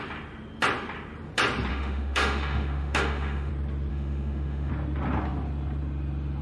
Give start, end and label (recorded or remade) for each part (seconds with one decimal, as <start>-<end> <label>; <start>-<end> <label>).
0.0-1.7 recorded; 1.7-3.5 remade; 3.5-3.9 recorded; 3.9-4.7 remade; 4.7-6.4 recorded